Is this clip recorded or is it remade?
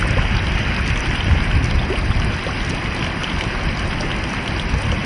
recorded